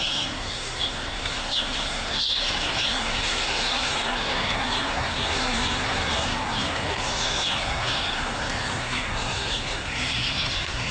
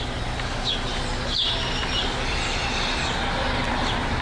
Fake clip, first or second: first